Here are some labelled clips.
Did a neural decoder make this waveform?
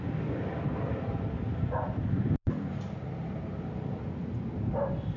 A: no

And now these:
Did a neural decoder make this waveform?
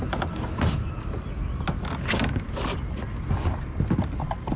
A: no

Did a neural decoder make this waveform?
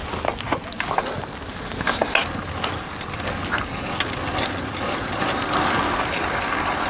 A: no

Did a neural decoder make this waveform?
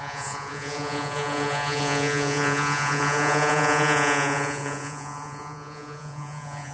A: yes